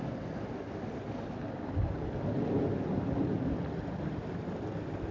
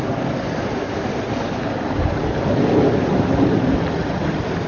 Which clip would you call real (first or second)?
first